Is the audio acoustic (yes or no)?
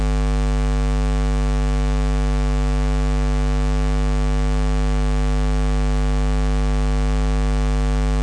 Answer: yes